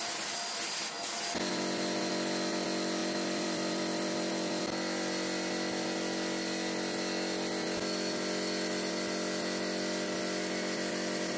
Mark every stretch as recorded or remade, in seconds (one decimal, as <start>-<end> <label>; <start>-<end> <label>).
0.0-3.0 recorded; 3.0-4.6 remade; 4.6-11.4 recorded